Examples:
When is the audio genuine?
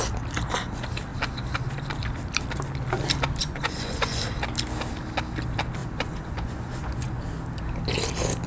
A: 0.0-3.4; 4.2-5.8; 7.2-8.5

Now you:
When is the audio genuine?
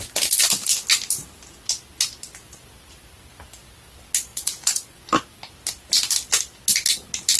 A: 0.0-4.3; 5.1-7.4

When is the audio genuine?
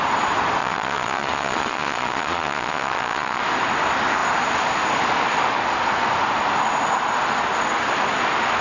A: 0.0-0.6; 3.4-8.6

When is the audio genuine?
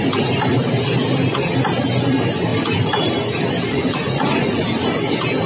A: 0.0-3.7; 4.6-5.5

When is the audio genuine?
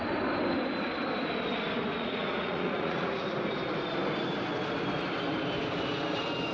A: 0.0-1.9; 3.3-6.5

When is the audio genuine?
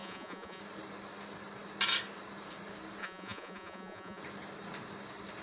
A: 0.6-3.0; 4.2-5.4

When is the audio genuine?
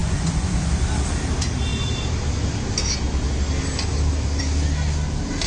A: 0.7-5.5